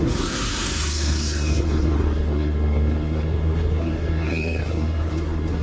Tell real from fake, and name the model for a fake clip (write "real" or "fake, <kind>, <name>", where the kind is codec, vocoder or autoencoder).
fake, codec, SNAC